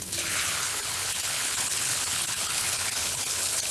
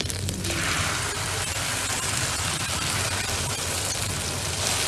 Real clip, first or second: second